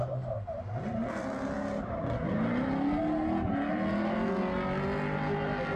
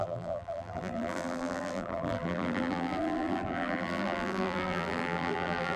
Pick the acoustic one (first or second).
first